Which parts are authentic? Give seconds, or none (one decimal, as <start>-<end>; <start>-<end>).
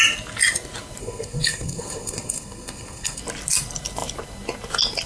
0.0-1.0; 3.2-5.1